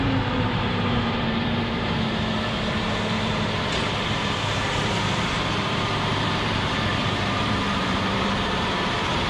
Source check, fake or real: fake